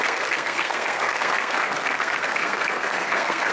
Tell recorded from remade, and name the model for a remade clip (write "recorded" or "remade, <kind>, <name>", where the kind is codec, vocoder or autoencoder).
remade, codec, SNAC